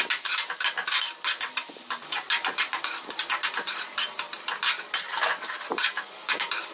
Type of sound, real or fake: real